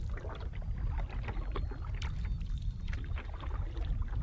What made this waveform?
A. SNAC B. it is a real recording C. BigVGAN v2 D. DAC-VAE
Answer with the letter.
B